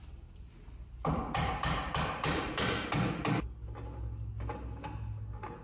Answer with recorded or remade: recorded